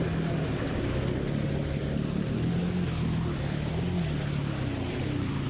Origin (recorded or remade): recorded